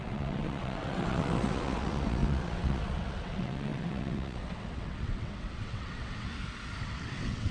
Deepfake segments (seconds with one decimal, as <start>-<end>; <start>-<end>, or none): 0.0-6.3; 6.8-7.5